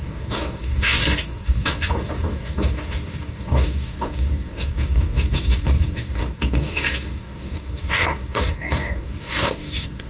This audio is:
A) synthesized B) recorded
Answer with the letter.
A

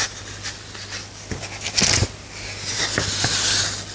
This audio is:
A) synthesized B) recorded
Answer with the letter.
B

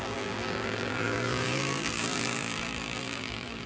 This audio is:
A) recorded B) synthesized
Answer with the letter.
B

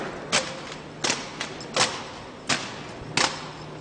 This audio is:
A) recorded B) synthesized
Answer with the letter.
A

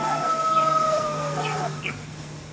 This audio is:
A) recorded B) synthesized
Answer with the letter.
B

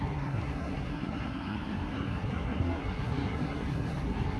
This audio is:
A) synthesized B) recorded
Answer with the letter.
A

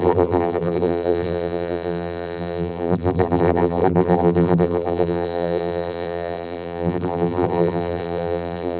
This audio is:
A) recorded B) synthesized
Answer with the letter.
B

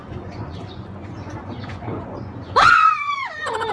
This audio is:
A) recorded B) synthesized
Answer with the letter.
B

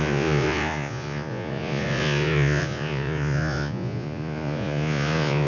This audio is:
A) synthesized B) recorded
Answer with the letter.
A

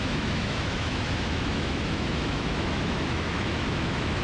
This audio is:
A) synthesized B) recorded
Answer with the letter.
A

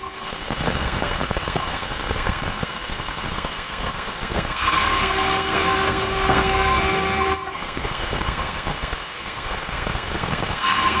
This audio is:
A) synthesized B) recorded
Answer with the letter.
A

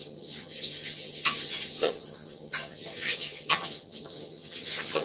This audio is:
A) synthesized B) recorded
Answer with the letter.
A